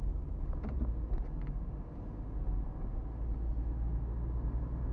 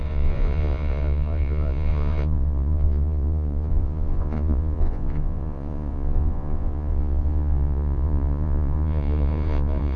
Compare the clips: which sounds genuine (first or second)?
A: first